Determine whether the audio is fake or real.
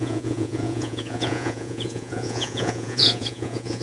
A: fake